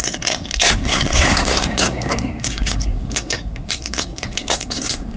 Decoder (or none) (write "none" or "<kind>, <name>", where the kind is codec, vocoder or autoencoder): codec, SNAC